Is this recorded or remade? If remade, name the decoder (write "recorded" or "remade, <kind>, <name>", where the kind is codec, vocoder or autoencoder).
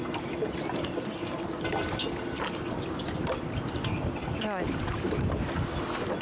recorded